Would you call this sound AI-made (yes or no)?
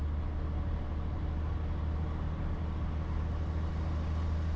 no